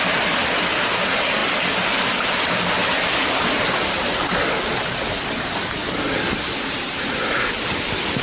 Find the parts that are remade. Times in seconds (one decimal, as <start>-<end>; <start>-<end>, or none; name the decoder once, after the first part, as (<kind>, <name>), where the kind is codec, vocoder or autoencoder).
none